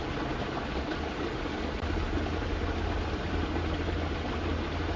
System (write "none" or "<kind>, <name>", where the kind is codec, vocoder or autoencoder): none